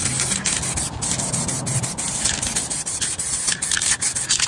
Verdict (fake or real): real